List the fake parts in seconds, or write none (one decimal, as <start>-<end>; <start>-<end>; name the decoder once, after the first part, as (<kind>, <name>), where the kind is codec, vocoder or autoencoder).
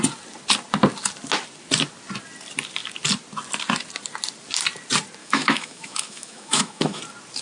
5.2-7.0 (autoencoder, DAC-VAE)